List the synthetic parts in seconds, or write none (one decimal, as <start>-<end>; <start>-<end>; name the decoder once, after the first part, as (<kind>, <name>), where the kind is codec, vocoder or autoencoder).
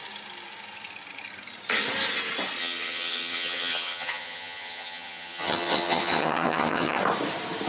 2.6-7.0 (vocoder, HiFi-GAN)